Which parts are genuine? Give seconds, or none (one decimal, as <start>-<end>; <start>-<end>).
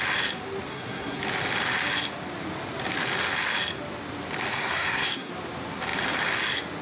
0.0-0.7; 1.2-4.5; 5.3-6.8